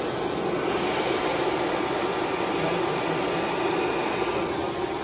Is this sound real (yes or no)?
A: yes